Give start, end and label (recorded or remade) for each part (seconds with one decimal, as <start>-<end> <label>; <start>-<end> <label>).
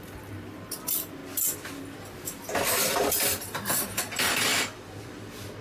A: 0.0-5.6 remade